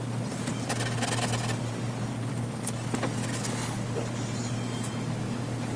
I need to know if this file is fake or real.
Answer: real